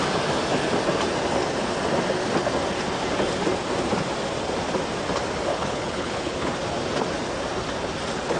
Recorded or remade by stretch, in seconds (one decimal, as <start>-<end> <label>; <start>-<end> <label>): 0.0-5.5 recorded; 5.5-6.5 remade; 6.5-8.4 recorded